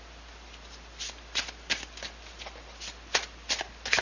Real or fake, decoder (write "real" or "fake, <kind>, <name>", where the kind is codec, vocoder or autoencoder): real